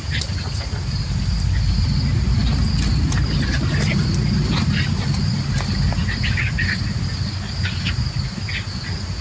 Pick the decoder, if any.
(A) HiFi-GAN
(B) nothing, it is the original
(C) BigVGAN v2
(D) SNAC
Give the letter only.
B